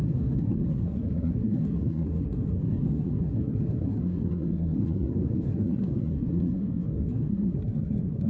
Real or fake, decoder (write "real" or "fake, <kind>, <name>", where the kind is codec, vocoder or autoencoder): fake, codec, SNAC